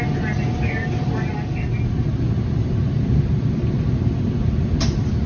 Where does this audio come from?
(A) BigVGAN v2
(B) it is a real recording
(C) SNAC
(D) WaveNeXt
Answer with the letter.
B